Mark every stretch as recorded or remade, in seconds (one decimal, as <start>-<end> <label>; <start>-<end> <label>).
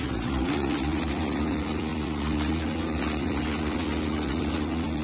0.0-5.0 remade